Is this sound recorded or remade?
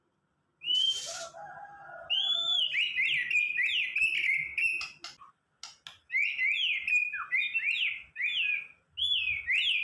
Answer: recorded